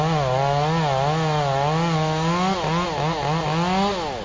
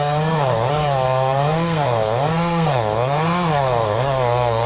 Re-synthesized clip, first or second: second